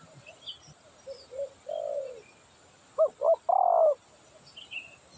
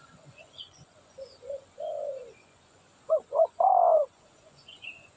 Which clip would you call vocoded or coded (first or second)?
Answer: second